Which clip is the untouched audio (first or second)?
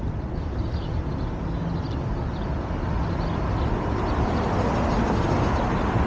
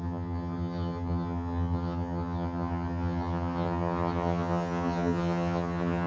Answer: first